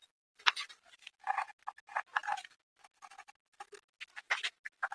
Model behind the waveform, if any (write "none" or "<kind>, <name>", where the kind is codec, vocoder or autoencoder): none